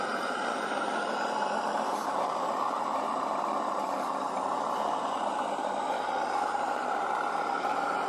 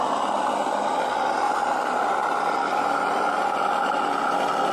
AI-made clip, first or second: first